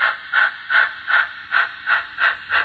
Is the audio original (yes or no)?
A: yes